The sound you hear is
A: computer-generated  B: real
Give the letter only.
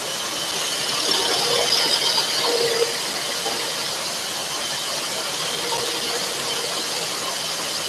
B